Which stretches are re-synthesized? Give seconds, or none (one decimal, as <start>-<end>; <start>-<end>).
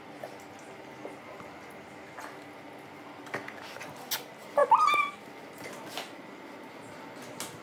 none